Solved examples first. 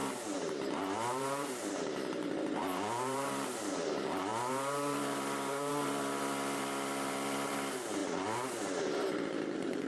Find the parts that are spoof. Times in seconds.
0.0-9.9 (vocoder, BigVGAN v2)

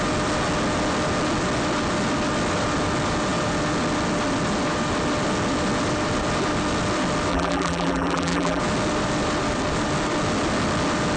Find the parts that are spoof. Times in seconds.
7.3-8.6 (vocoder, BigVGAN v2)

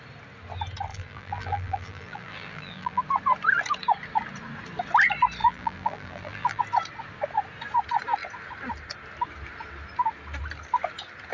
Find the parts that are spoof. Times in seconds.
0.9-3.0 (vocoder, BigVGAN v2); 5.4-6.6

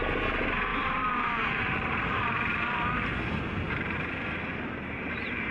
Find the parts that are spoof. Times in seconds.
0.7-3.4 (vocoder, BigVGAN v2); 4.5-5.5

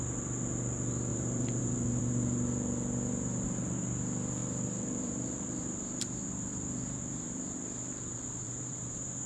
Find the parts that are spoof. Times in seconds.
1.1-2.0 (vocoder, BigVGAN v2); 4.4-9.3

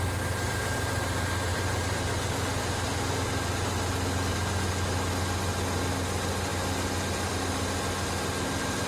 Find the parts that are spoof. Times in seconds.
1.5-2.1 (vocoder, BigVGAN v2)

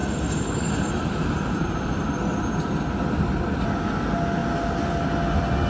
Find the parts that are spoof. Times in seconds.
0.0-2.1 (vocoder, BigVGAN v2)

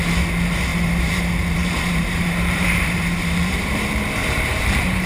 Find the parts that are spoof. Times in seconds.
0.7-3.8 (vocoder, BigVGAN v2); 4.2-5.1